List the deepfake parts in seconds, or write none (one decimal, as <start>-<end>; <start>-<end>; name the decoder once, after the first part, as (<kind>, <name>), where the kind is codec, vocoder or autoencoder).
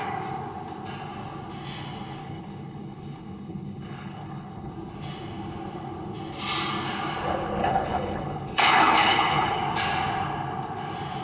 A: 2.2-4.7 (codec, HILCodec); 7.6-9.6